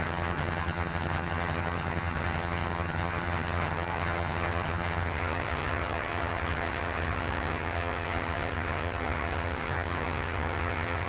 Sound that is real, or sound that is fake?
fake